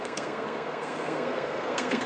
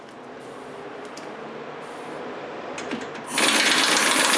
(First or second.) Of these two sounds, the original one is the second